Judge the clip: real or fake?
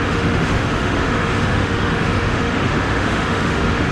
fake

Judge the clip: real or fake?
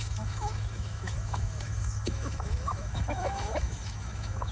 fake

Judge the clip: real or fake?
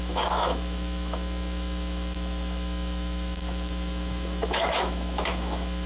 fake